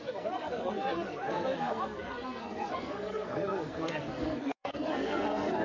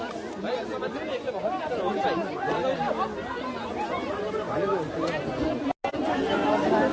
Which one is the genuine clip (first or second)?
second